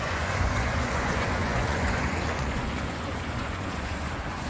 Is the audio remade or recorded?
remade